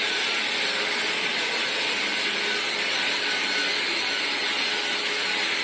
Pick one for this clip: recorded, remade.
recorded